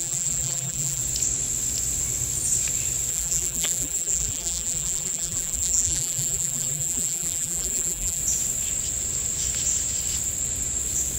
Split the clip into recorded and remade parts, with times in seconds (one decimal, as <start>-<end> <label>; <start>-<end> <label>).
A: 0.0-1.0 remade; 1.0-3.1 recorded; 3.1-8.2 remade; 8.2-11.2 recorded

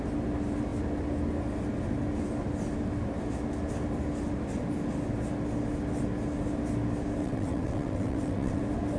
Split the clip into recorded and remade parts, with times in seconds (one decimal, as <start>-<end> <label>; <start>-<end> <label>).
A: 0.0-7.2 recorded; 7.2-8.6 remade; 8.6-9.0 recorded

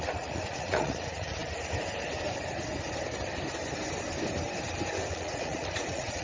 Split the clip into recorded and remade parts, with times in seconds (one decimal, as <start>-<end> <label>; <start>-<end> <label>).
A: 0.0-1.4 remade; 1.4-5.1 recorded; 5.1-6.2 remade